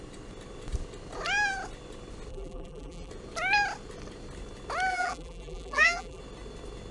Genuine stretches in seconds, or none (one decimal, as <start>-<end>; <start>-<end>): 0.0-2.3; 3.1-4.9; 6.2-6.9